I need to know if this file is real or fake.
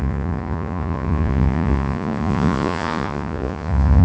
fake